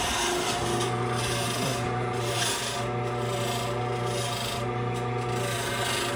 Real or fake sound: real